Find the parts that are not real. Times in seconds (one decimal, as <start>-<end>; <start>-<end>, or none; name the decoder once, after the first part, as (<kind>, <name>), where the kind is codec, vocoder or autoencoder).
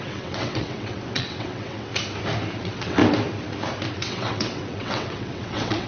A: 0.0-1.9 (vocoder, WaveNeXt); 2.6-3.0; 3.9-5.9